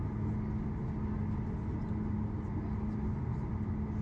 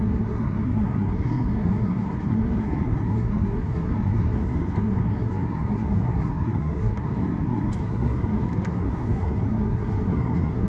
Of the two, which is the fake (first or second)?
second